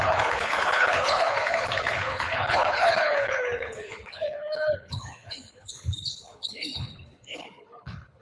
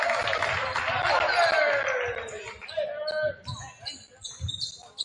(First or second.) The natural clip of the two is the second